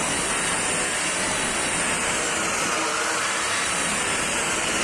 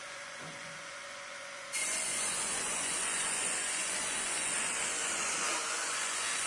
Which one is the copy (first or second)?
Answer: second